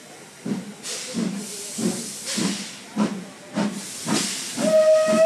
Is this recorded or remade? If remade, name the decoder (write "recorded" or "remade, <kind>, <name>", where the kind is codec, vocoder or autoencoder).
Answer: recorded